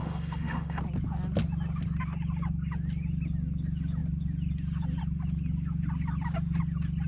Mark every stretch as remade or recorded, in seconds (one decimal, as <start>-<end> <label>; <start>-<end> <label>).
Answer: 0.0-0.8 remade; 0.8-7.1 recorded